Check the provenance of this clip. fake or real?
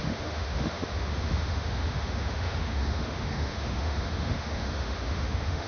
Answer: fake